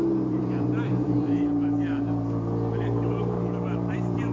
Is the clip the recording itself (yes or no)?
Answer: no